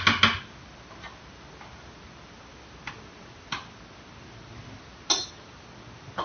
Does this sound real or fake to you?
real